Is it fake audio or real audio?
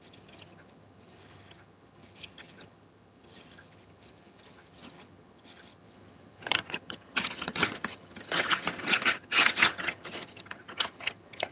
fake